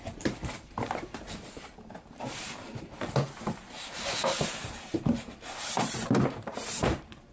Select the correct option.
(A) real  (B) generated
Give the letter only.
B